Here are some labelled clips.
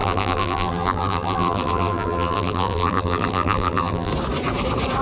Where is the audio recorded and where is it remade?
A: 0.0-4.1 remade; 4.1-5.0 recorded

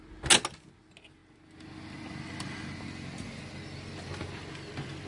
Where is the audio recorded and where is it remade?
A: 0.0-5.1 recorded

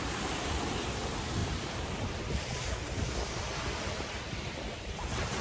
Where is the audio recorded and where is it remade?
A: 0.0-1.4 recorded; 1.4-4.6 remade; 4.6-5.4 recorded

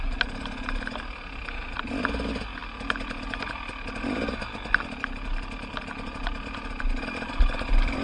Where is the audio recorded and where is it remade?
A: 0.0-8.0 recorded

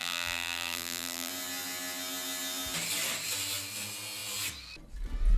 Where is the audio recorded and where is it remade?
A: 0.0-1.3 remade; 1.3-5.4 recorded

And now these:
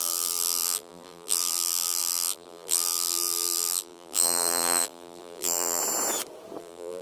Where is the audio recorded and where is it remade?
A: 0.0-5.8 remade; 5.8-6.6 recorded; 6.6-7.0 remade